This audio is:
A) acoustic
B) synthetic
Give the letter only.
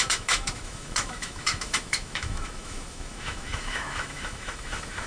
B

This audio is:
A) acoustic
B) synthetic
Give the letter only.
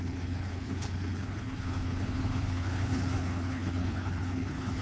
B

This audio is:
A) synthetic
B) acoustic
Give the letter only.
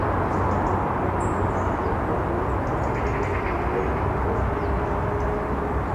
B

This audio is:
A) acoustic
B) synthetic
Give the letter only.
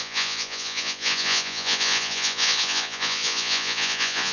B